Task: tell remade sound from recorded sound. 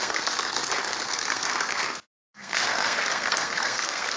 remade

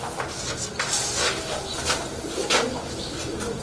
recorded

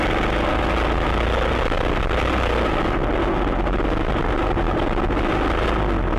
recorded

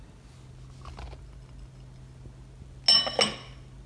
recorded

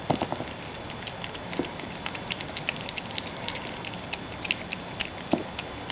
recorded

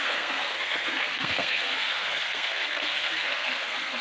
remade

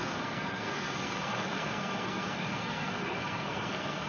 remade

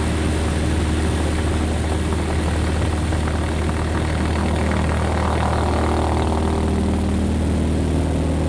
recorded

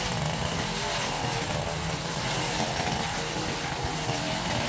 recorded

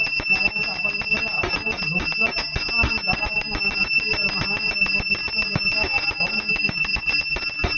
recorded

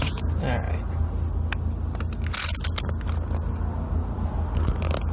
recorded